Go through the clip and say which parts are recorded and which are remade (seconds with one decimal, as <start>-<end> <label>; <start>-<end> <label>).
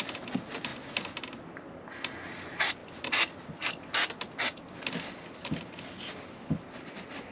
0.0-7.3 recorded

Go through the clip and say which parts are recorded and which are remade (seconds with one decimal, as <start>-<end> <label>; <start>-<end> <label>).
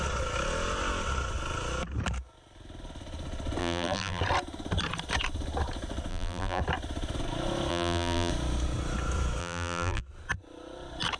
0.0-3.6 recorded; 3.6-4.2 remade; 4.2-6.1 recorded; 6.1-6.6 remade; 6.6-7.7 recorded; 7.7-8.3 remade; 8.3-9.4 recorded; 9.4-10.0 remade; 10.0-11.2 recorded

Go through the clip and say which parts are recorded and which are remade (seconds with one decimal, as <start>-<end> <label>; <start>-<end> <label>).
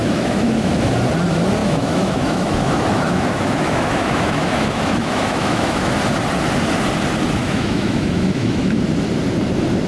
0.0-0.7 remade; 0.7-1.6 recorded; 1.6-5.9 remade; 5.9-7.4 recorded; 7.4-8.8 remade; 8.8-9.9 recorded